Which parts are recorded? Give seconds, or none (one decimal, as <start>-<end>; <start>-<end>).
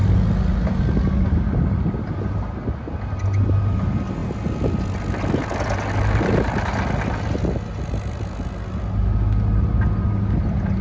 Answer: 0.0-10.8